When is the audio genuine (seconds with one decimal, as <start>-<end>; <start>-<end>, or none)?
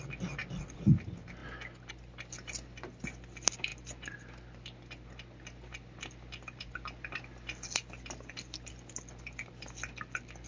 0.0-10.5